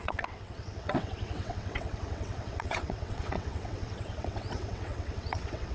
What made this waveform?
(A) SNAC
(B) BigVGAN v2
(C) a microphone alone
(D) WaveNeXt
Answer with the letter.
D